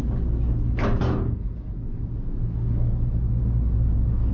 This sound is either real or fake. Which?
real